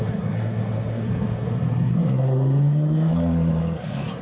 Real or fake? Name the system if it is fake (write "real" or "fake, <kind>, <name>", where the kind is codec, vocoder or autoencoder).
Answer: fake, codec, SNAC